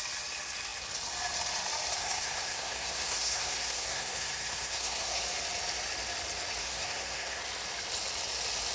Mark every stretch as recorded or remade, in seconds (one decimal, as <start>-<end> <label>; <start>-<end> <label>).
0.0-1.9 recorded; 1.9-5.2 remade; 5.2-6.6 recorded; 6.6-7.4 remade; 7.4-8.7 recorded